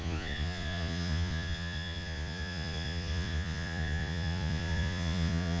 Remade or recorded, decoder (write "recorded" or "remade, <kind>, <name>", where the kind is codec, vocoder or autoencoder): remade, vocoder, Vocos